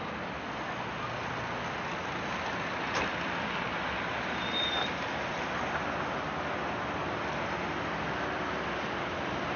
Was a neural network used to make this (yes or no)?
no